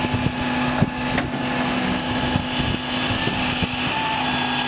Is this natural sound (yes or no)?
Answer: yes